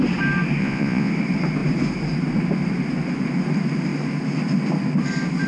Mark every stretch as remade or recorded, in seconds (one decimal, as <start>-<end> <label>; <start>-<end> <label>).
0.0-0.6 recorded; 0.6-1.1 remade; 1.1-5.5 recorded